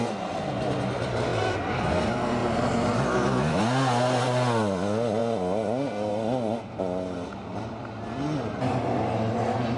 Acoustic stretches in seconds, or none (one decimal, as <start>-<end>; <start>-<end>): 0.0-2.4; 3.6-5.2; 6.1-9.8